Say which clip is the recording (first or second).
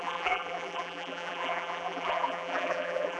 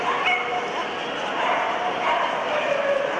second